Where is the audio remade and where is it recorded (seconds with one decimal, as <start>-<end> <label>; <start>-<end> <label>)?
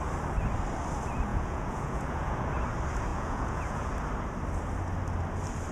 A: 0.0-1.3 recorded; 1.3-2.4 remade; 2.4-3.1 recorded; 3.1-3.9 remade; 3.9-5.7 recorded